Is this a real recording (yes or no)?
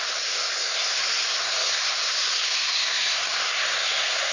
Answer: no